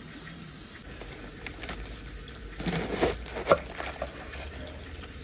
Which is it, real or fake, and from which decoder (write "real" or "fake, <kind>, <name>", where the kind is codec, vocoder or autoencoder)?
real